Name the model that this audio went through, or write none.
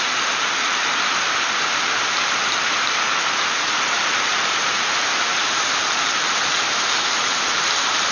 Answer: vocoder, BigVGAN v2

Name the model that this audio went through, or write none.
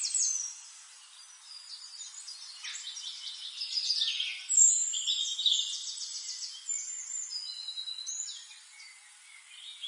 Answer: none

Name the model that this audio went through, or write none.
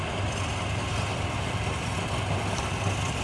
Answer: none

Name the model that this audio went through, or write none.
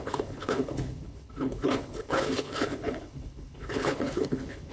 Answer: codec, HILCodec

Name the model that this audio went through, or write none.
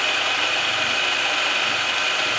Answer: none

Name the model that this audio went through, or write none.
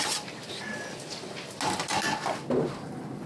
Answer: none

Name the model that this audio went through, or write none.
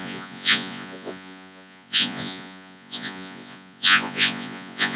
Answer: vocoder, Vocos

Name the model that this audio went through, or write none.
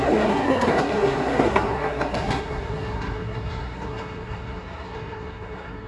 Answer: codec, SNAC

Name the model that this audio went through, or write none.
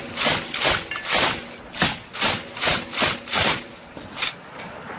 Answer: none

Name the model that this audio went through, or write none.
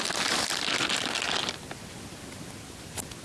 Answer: none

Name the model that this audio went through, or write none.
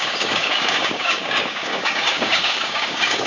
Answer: codec, DAC